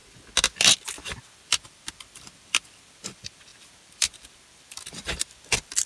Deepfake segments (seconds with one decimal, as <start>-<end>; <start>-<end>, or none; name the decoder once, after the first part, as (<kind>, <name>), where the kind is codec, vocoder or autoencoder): 1.2-5.9 (vocoder, BigVGAN v2)